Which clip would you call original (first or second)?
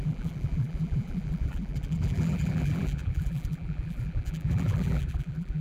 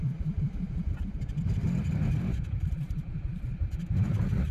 second